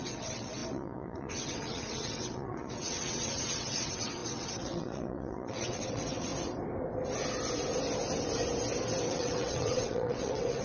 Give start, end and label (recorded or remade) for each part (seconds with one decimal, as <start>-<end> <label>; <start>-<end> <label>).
0.0-6.3 remade; 6.3-9.0 recorded; 9.0-10.6 remade